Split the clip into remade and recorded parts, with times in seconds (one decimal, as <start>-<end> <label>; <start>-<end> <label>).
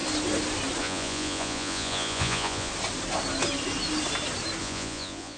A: 0.0-0.8 recorded; 0.8-2.7 remade; 2.7-4.6 recorded; 4.6-5.4 remade